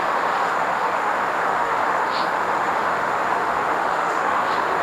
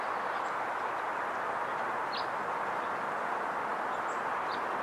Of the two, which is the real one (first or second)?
second